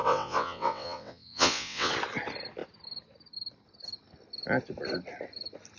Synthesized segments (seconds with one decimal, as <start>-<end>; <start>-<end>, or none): 0.0-1.9